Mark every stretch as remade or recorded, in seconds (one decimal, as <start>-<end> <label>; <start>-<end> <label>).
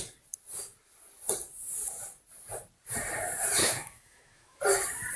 0.0-3.6 recorded; 3.6-4.6 remade; 4.6-5.2 recorded